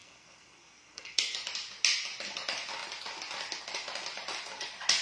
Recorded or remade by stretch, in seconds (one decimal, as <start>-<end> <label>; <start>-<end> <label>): 0.0-1.2 remade; 1.2-5.0 recorded